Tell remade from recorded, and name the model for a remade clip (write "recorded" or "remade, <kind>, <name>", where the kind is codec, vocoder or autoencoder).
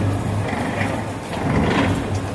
recorded